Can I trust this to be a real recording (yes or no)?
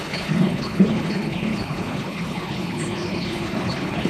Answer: no